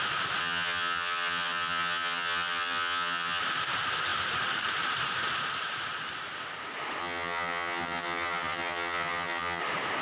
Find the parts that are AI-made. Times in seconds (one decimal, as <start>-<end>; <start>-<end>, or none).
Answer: 0.4-3.4; 7.0-9.6